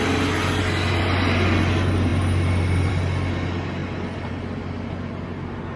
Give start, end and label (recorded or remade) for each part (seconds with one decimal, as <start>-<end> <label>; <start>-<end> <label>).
0.0-5.8 recorded